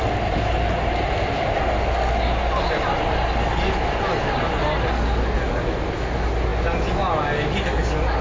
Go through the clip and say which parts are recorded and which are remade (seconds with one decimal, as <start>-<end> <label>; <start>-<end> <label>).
0.0-8.2 recorded